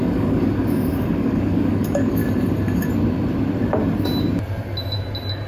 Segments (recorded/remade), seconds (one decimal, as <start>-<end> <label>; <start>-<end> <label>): 0.0-2.2 remade; 2.2-5.5 recorded

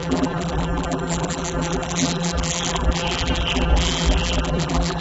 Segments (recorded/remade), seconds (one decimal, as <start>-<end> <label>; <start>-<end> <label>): 0.0-5.0 remade

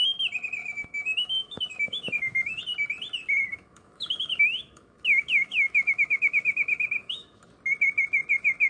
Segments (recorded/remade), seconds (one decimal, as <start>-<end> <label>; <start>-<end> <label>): 0.0-0.6 recorded; 0.6-2.6 remade; 2.6-3.5 recorded; 3.5-7.4 remade; 7.4-8.7 recorded

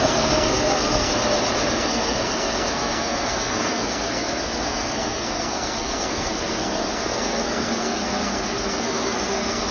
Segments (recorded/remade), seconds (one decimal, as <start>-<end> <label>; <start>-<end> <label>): 0.0-1.1 remade; 1.1-1.7 recorded; 1.7-9.7 remade

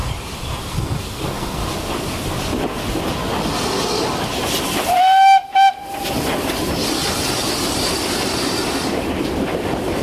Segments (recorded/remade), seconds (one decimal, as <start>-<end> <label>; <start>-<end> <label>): 0.0-0.7 recorded; 0.7-1.6 remade; 1.6-10.0 recorded

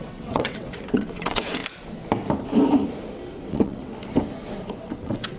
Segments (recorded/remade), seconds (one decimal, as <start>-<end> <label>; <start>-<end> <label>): 0.0-1.6 remade; 1.6-3.5 recorded; 3.5-3.9 remade; 3.9-4.8 recorded; 4.8-5.4 remade

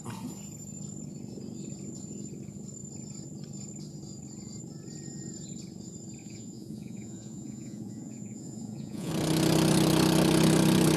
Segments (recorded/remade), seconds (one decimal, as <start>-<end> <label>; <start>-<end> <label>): 0.0-6.2 recorded; 6.2-9.1 remade; 9.1-11.0 recorded